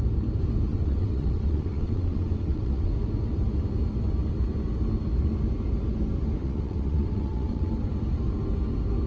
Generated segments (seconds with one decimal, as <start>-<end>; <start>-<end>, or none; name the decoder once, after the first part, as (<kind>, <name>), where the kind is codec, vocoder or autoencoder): 0.7-2.9 (vocoder, WaveNeXt); 6.4-7.7